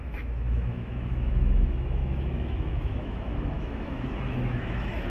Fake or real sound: fake